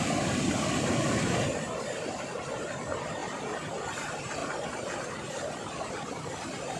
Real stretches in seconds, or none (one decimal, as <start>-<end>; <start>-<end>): 4.4-5.1